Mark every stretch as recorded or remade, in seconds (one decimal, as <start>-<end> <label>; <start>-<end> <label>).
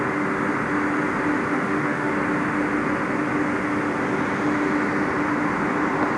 0.0-1.5 recorded; 1.5-2.1 remade; 2.1-6.2 recorded